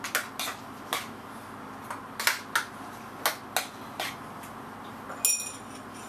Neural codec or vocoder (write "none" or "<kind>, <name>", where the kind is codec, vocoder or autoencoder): none